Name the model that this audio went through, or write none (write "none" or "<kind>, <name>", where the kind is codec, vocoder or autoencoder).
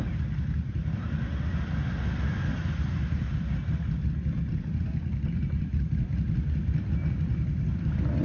vocoder, BigVGAN v2